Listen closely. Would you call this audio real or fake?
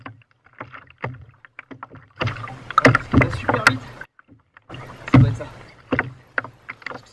real